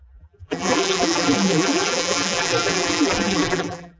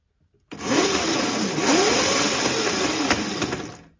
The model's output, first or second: first